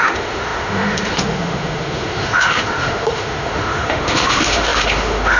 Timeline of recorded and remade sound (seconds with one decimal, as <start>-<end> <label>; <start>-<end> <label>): 0.0-5.4 remade